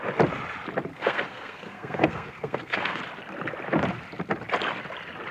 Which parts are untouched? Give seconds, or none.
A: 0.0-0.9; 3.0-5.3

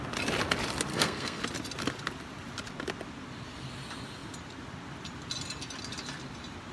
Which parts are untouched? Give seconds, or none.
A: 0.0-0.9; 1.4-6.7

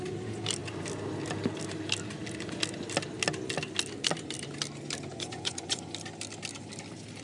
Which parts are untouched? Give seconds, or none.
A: 0.0-5.1; 5.9-7.2

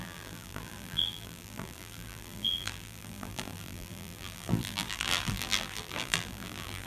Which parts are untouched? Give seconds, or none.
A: none

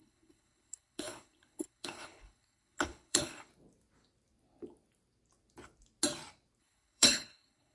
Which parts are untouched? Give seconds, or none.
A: 3.5-6.6

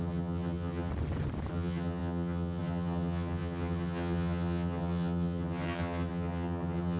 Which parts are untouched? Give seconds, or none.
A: 0.9-1.5

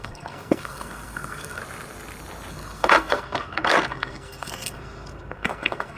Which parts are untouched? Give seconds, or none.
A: 1.6-2.5